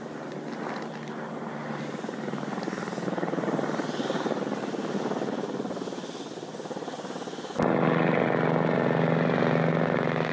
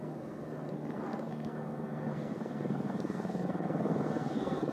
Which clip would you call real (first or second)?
first